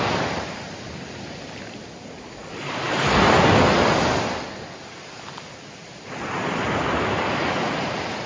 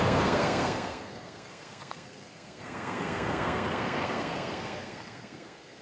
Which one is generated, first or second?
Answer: second